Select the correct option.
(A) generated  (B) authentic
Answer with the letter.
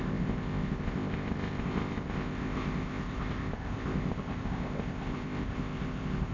A